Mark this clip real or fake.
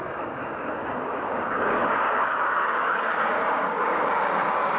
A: fake